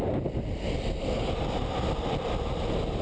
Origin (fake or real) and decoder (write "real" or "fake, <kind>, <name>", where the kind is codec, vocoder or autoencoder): real